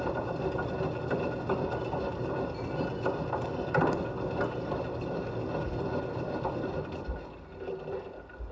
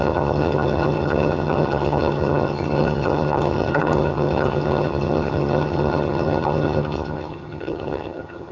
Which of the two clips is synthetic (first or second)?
second